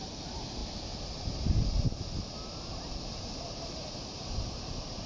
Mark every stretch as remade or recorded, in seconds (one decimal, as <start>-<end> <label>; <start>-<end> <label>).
0.0-5.1 recorded